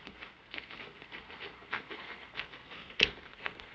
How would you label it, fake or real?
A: fake